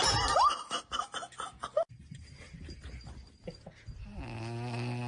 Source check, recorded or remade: recorded